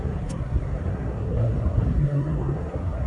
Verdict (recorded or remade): remade